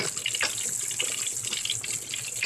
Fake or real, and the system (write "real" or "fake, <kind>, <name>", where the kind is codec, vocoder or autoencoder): real